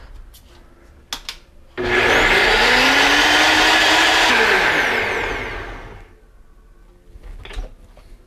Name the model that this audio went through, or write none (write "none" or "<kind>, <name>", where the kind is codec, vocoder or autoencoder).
none